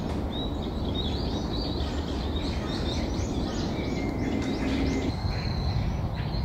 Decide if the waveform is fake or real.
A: real